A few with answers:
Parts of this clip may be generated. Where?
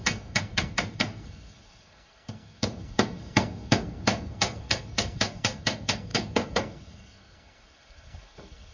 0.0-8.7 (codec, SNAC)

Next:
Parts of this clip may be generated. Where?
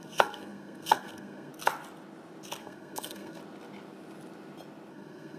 0.0-1.5 (codec, SNAC); 2.6-3.4; 4.9-5.4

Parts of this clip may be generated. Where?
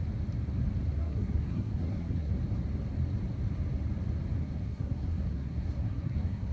1.0-2.3 (codec, SNAC); 4.4-6.5